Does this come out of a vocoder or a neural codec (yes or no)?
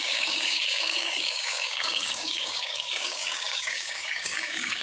yes